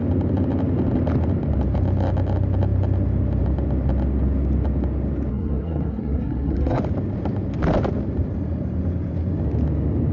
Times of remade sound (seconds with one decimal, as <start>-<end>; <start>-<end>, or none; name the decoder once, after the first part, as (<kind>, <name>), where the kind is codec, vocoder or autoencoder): 5.3-6.8 (codec, SNAC)